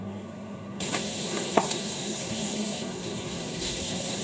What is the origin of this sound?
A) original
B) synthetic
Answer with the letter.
B